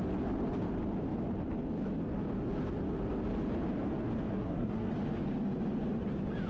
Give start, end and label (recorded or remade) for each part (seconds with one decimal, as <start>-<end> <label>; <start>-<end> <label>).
0.0-4.3 recorded; 4.3-4.9 remade; 4.9-6.5 recorded

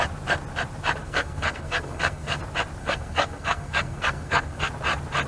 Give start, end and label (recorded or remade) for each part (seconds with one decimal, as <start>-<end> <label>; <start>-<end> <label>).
0.0-1.0 recorded; 1.0-2.4 remade; 2.4-2.8 recorded; 2.8-4.7 remade; 4.7-5.3 recorded

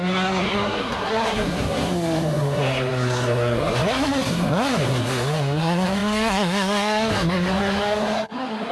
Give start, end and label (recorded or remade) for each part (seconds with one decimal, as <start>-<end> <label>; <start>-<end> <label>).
0.0-8.7 remade

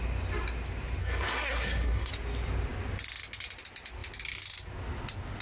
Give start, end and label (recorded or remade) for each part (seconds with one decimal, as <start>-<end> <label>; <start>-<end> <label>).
0.0-1.0 recorded; 1.0-2.1 remade; 2.1-5.4 recorded

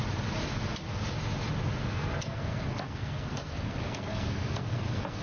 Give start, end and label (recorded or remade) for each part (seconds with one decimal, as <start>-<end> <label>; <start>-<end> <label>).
0.0-1.8 recorded; 1.8-5.2 remade

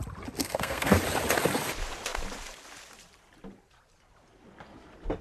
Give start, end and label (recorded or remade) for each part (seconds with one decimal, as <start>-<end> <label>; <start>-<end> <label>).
0.0-0.4 recorded; 0.4-1.0 remade; 1.0-5.2 recorded